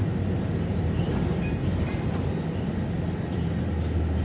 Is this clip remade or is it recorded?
recorded